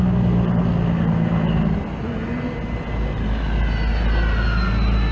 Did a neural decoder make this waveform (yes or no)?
no